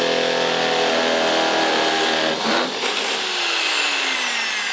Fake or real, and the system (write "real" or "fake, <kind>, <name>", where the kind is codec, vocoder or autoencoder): real